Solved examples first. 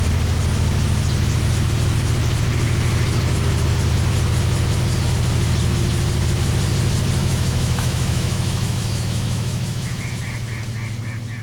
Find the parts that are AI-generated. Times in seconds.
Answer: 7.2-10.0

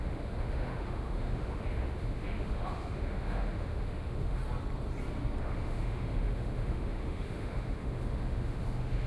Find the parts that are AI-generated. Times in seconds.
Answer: 0.0-4.4; 5.4-9.1

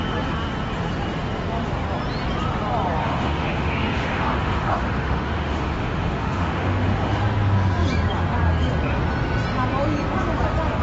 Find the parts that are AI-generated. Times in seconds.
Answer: 3.0-7.2

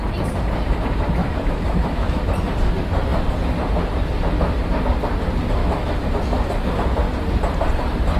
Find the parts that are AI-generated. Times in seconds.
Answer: 1.2-2.2; 5.6-6.1

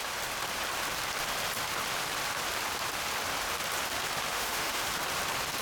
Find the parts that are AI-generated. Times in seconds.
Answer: 4.3-4.9